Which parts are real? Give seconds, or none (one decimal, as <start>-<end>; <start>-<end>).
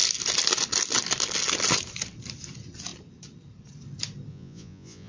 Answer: 0.0-4.3